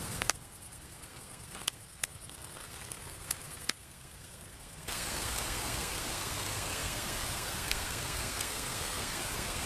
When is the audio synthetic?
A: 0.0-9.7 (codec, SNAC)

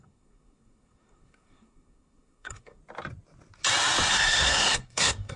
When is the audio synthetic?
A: 0.0-2.8 (codec, SNAC); 4.1-5.4

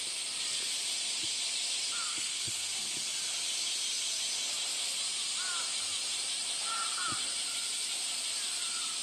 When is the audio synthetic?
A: 2.1-2.7 (codec, SNAC)

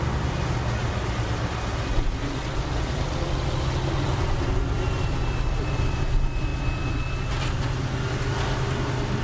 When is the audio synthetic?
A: none